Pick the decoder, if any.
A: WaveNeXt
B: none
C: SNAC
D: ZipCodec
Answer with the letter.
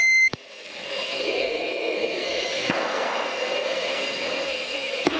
C